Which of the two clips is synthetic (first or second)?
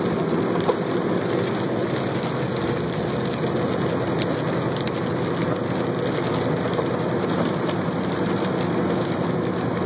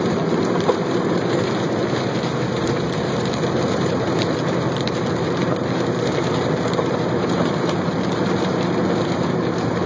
second